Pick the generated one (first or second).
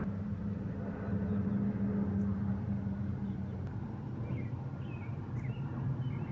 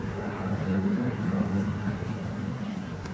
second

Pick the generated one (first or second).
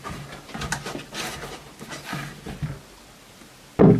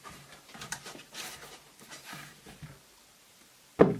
second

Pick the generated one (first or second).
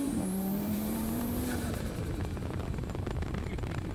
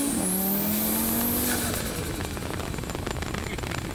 first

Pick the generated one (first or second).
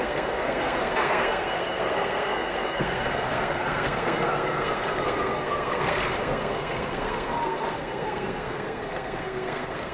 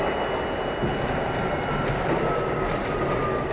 first